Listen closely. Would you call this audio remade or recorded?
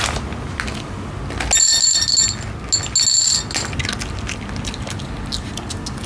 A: recorded